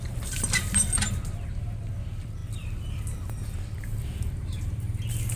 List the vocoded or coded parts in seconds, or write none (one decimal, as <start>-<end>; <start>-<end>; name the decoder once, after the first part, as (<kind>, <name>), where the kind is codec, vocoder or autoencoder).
none